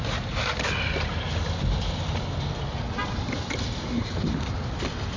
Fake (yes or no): no